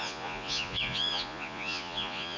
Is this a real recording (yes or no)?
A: no